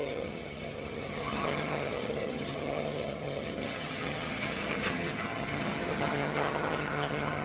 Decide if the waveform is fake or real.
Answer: fake